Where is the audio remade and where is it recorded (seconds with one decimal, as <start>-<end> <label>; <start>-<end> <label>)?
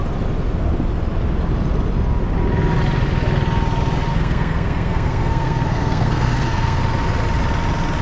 0.0-4.1 recorded; 4.1-6.8 remade; 6.8-8.0 recorded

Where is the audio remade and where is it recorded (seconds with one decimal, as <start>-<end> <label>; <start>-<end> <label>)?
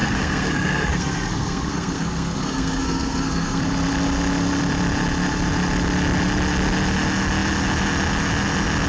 0.0-3.6 remade; 3.6-8.9 recorded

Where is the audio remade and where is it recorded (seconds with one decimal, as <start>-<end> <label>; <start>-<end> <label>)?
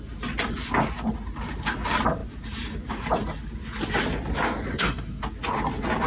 0.0-4.7 recorded; 4.7-5.2 remade; 5.2-6.1 recorded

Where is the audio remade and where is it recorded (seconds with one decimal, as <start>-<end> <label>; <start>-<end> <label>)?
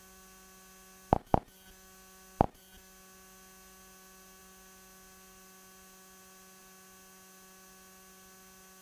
0.0-8.8 recorded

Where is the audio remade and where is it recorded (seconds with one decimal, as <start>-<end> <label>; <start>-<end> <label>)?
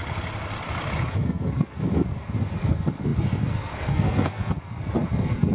0.0-1.1 recorded; 1.1-5.5 remade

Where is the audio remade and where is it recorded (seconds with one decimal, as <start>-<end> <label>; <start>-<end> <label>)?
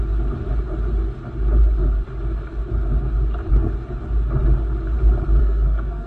0.0-5.4 recorded; 5.4-6.1 remade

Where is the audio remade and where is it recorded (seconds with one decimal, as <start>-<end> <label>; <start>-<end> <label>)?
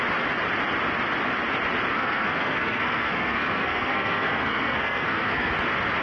0.0-1.9 recorded; 1.9-5.5 remade; 5.5-6.0 recorded